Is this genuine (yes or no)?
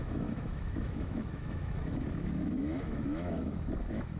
no